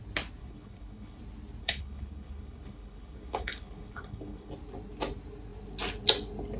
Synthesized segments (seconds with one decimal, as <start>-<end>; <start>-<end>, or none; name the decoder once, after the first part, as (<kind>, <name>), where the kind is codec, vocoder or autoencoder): 0.4-1.2 (codec, HILCodec); 1.6-4.5